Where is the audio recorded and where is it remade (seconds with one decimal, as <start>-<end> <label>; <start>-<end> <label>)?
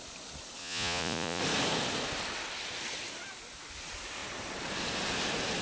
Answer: 0.0-0.6 recorded; 0.6-1.4 remade; 1.4-5.6 recorded